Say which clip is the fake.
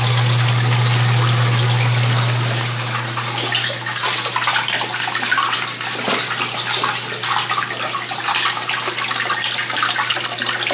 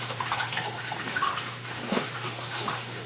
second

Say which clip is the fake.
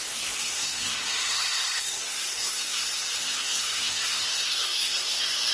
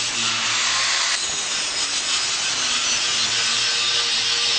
first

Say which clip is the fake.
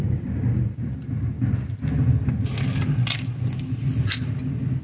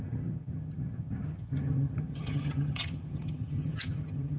second